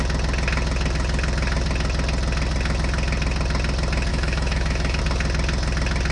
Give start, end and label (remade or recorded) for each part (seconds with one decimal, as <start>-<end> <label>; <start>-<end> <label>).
0.0-4.1 recorded; 4.1-5.0 remade; 5.0-6.1 recorded